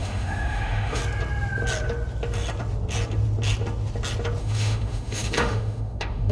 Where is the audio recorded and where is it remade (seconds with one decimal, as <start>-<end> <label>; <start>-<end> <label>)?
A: 0.0-1.0 remade; 1.0-4.4 recorded; 4.4-6.3 remade